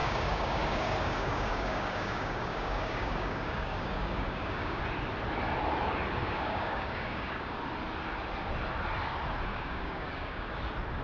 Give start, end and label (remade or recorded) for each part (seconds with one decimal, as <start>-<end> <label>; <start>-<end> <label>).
0.0-4.8 remade; 4.8-6.2 recorded; 6.2-7.6 remade; 7.6-9.5 recorded; 9.5-10.5 remade; 10.5-11.0 recorded